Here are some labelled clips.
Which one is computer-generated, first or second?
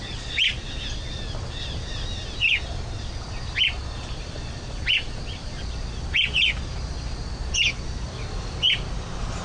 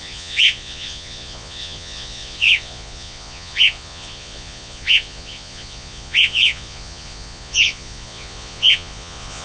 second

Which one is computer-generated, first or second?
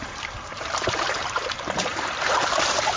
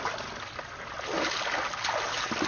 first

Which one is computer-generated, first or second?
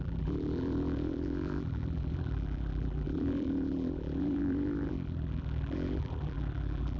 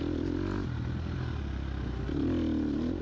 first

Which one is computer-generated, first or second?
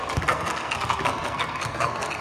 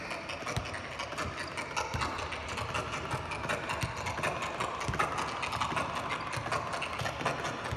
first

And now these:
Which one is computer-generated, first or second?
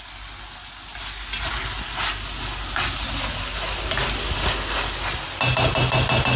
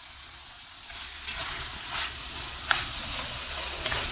second